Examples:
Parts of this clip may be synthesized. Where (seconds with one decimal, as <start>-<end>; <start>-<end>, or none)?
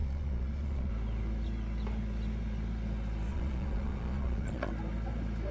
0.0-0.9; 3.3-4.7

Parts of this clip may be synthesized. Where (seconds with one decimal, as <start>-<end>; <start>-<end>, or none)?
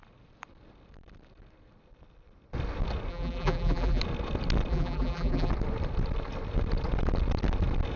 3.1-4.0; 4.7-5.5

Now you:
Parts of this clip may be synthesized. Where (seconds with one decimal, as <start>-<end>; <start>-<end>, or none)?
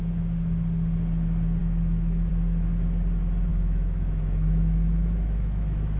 1.6-2.3; 3.5-6.0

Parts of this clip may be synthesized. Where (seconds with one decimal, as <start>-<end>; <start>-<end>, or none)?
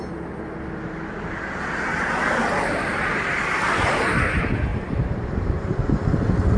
4.7-5.7